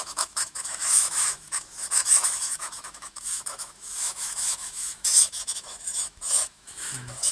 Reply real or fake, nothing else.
fake